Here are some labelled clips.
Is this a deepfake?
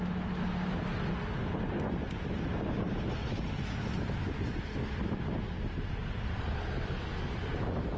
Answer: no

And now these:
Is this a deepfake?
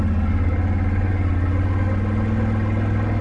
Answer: no